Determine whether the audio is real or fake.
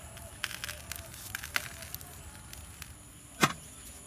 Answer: real